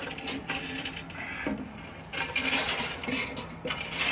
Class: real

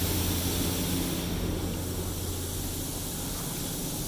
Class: real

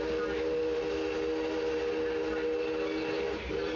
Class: real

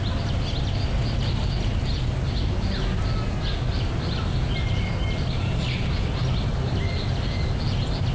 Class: real